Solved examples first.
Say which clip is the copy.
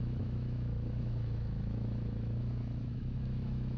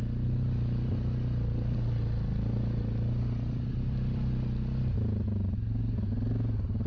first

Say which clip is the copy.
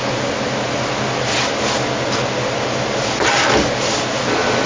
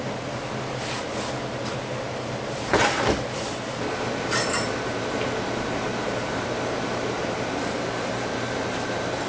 second